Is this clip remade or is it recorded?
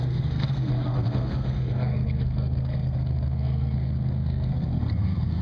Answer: remade